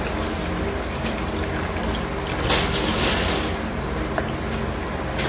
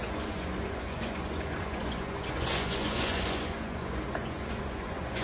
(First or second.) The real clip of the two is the first